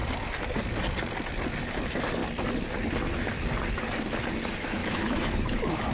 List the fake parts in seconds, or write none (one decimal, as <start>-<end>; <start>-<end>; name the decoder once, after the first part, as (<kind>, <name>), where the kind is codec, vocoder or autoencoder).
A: 4.8-5.9 (autoencoder, DAC-VAE)